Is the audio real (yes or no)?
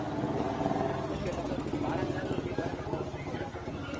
yes